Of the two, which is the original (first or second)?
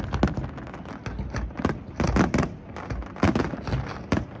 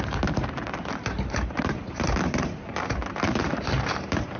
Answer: first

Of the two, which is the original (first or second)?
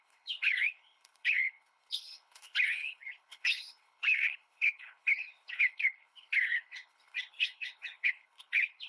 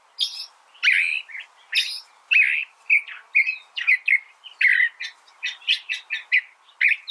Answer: second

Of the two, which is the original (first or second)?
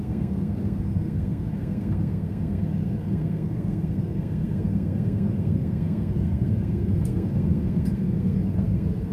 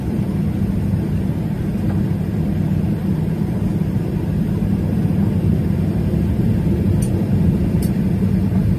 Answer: second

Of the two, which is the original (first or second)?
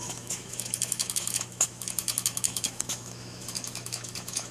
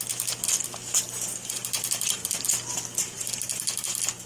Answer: second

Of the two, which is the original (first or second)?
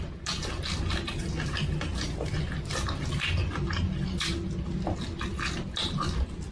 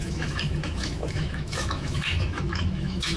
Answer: first